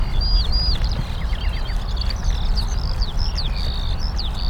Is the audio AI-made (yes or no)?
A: no